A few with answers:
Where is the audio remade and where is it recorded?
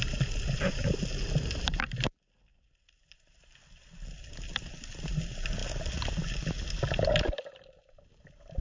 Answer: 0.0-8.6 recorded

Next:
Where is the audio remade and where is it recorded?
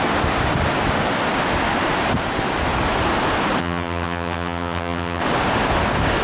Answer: 0.0-3.6 recorded; 3.6-5.2 remade; 5.2-6.2 recorded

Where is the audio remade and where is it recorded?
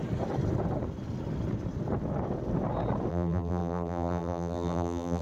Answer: 0.0-3.1 recorded; 3.1-5.2 remade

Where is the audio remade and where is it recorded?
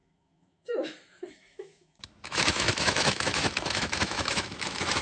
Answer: 0.0-5.0 remade